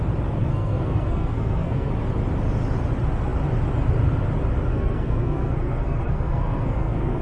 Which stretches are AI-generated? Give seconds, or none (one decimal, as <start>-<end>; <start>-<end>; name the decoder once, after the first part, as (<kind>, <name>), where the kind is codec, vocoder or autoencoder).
0.4-1.9 (codec, SNAC); 4.7-7.2